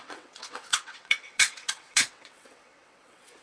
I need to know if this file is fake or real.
fake